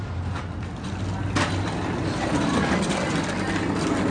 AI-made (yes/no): no